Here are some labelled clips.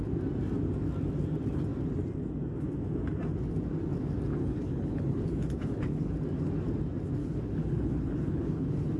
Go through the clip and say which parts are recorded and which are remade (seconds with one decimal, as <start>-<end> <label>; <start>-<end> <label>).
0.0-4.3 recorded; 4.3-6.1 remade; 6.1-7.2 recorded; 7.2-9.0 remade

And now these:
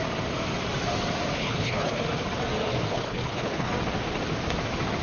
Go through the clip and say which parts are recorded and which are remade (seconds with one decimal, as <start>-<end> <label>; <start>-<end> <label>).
0.0-1.4 recorded; 1.4-2.0 remade; 2.0-2.9 recorded; 2.9-3.7 remade; 3.7-5.0 recorded

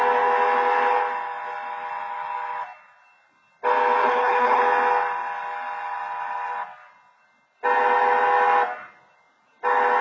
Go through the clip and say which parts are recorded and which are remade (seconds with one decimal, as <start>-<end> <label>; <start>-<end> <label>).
0.0-4.0 recorded; 4.0-4.6 remade; 4.6-10.0 recorded